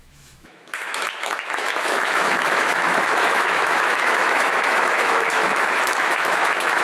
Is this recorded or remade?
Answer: remade